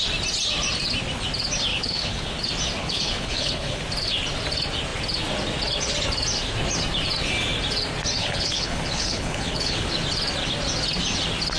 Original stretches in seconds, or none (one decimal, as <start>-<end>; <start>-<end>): 0.0-1.7; 2.4-2.8; 3.8-8.2; 9.9-11.6